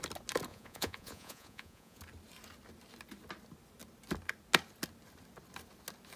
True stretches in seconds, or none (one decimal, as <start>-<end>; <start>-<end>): 0.0-0.5; 2.0-6.2